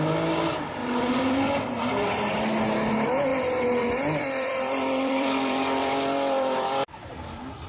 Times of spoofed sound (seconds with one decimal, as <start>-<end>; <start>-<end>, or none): 0.8-2.1; 3.3-7.7